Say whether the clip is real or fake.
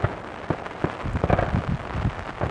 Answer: real